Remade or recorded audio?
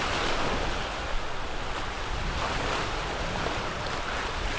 recorded